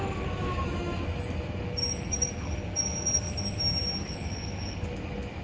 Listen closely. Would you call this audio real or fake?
fake